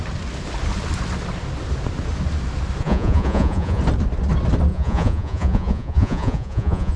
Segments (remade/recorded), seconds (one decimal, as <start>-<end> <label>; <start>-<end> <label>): 0.0-2.8 recorded; 2.8-3.8 remade; 3.8-4.7 recorded; 4.7-7.0 remade